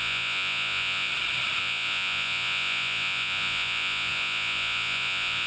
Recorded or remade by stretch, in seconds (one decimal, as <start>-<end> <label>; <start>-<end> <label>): 0.0-1.1 remade; 1.1-1.6 recorded; 1.6-5.5 remade